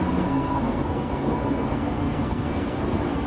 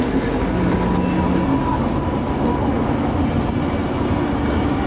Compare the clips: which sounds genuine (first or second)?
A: second